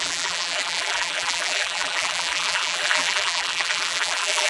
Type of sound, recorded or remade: remade